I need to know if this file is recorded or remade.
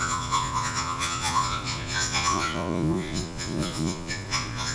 remade